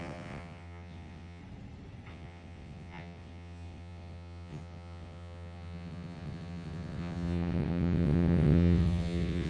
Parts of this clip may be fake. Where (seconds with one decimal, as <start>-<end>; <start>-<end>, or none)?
0.0-1.4; 2.1-9.5